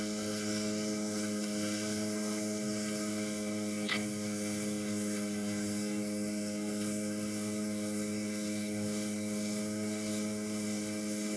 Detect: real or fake fake